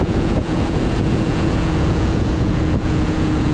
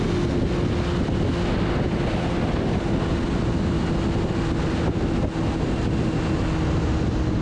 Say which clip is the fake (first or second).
first